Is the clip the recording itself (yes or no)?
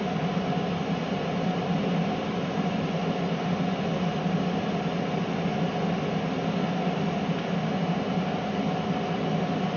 yes